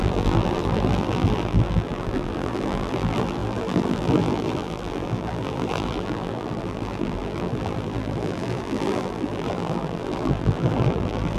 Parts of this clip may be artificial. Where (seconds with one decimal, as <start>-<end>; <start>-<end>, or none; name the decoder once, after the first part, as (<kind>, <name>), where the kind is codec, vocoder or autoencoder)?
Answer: 0.0-11.4 (vocoder, BigVGAN v2)